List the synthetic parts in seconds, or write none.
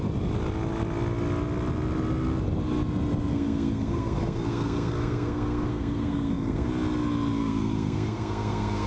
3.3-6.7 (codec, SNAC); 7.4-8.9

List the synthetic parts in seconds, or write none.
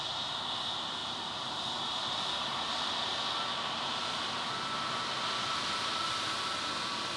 none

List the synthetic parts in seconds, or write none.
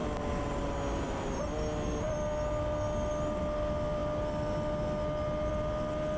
none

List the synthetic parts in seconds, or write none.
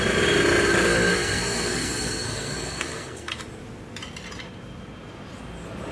1.1-3.4 (codec, SNAC)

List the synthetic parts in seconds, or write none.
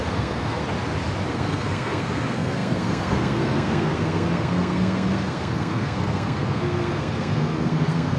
0.0-0.6 (codec, SNAC); 1.3-8.2